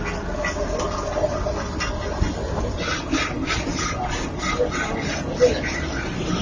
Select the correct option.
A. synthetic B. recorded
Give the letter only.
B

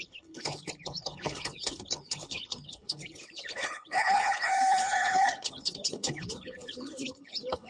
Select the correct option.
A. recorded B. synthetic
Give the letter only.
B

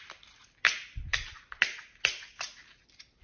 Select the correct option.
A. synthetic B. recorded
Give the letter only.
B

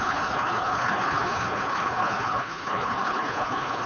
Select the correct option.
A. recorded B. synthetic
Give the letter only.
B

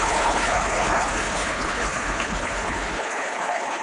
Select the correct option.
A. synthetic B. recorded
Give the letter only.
A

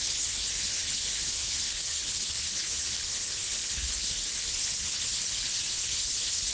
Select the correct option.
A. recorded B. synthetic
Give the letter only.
B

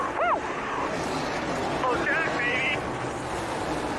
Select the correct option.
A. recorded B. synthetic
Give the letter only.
A